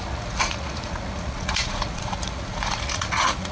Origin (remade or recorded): remade